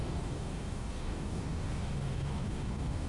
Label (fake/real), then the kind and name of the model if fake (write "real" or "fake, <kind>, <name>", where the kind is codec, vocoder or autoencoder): fake, codec, DAC